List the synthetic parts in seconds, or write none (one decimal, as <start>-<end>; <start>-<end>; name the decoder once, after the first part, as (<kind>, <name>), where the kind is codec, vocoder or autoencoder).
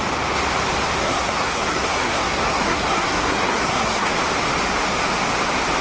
1.0-4.1 (codec, SNAC)